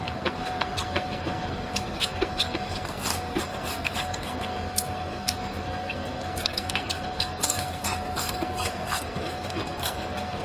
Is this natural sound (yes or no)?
no